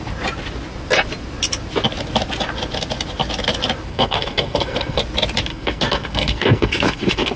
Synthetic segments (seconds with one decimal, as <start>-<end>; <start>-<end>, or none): 3.9-5.0; 5.5-7.4